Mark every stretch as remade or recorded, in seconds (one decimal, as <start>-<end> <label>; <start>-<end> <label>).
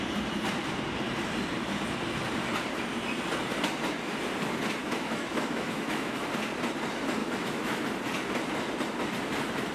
0.0-4.8 recorded; 4.8-6.3 remade; 6.3-7.2 recorded; 7.2-7.8 remade; 7.8-9.7 recorded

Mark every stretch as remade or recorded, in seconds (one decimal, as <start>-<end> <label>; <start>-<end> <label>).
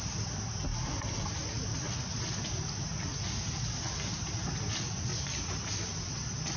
0.0-6.6 recorded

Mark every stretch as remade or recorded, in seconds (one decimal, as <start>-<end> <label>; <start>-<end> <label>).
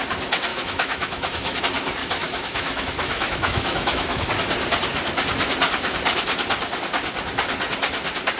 0.0-0.5 recorded; 0.5-1.6 remade; 1.6-2.0 recorded; 2.0-4.3 remade; 4.3-8.4 recorded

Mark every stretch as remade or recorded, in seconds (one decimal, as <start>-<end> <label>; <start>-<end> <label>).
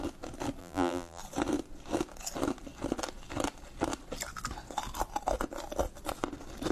0.0-0.6 recorded; 0.6-1.2 remade; 1.2-6.7 recorded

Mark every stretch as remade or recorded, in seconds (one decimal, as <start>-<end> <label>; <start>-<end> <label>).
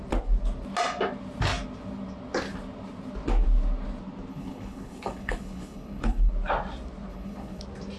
0.0-4.3 recorded; 4.3-6.3 remade; 6.3-7.1 recorded; 7.1-7.6 remade; 7.6-8.0 recorded